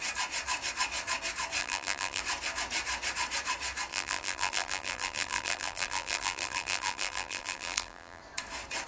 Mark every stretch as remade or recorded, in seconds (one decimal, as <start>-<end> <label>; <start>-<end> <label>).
0.0-1.6 recorded; 1.6-2.2 remade; 2.2-3.9 recorded; 3.9-8.2 remade; 8.2-8.9 recorded